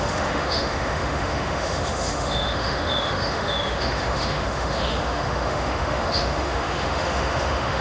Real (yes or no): no